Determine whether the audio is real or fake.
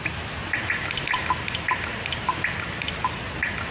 real